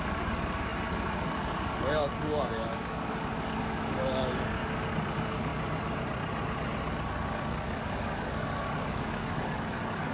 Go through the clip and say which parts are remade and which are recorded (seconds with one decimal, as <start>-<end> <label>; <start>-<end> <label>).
0.0-4.6 remade; 4.6-5.1 recorded; 5.1-5.5 remade; 5.5-7.3 recorded; 7.3-10.1 remade